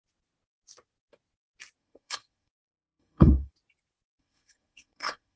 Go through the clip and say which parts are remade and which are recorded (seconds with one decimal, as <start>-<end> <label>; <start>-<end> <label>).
0.0-1.8 recorded; 1.8-3.5 remade; 3.5-4.1 recorded; 4.1-5.4 remade